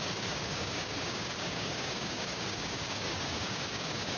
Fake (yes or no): yes